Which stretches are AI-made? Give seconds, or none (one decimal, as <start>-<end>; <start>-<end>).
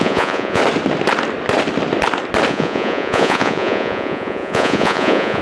0.0-0.6; 2.5-5.4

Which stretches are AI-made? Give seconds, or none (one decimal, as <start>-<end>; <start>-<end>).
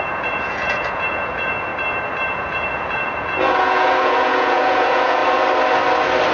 0.0-1.7; 2.3-5.2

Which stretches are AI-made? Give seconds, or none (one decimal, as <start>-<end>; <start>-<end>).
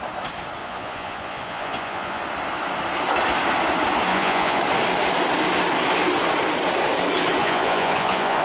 0.6-2.2; 4.1-4.6; 7.4-8.4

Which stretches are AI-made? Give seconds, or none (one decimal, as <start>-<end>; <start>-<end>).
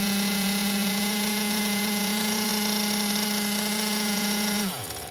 0.0-2.5; 3.7-5.1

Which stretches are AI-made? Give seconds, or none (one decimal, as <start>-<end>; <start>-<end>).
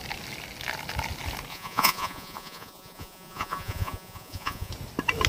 1.5-4.7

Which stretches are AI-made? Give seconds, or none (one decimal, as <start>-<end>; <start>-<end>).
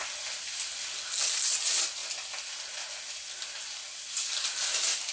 none